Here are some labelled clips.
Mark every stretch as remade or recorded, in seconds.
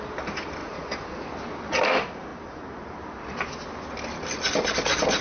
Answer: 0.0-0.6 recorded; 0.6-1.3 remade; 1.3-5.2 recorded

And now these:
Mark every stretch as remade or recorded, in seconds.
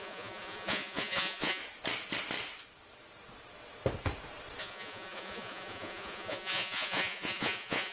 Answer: 0.0-1.6 remade; 1.6-4.6 recorded; 4.6-7.9 remade